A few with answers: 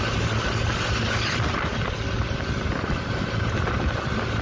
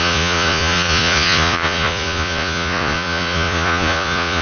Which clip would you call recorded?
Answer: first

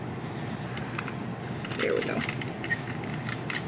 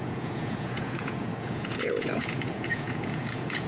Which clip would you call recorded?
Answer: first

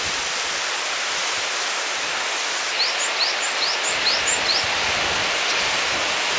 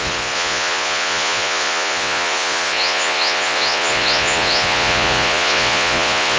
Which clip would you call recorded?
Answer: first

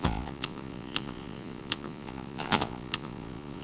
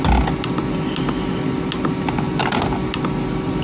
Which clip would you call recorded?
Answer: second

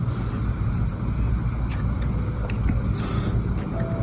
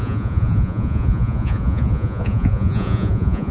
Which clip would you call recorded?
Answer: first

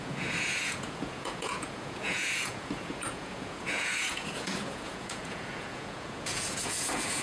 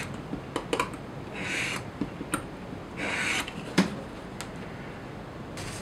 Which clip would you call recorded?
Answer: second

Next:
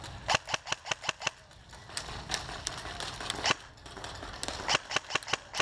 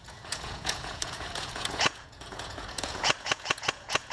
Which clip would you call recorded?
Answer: first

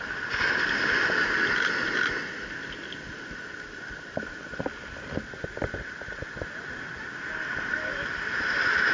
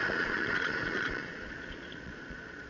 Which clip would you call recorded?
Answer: first